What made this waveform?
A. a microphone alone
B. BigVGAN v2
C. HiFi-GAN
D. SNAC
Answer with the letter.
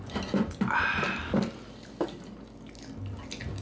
A